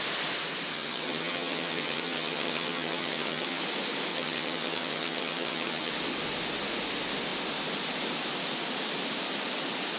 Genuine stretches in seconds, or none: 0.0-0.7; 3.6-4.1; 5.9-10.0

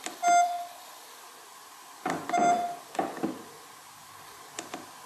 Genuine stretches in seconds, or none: 0.0-5.1

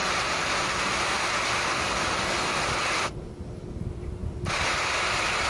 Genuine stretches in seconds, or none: 0.0-5.5

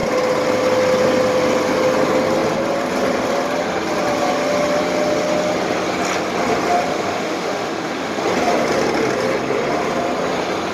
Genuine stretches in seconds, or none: 0.0-6.9; 8.2-10.7

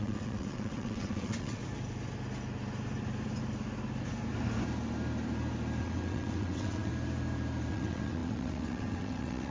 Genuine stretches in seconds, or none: 1.6-5.8; 6.9-7.7

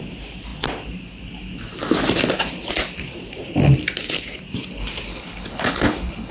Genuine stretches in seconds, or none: 0.0-5.1